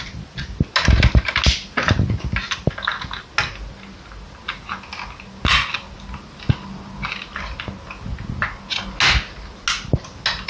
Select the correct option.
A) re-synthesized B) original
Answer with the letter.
B